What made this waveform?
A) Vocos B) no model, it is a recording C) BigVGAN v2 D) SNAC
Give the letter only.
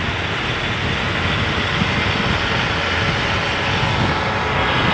B